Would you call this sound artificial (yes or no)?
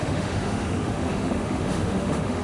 yes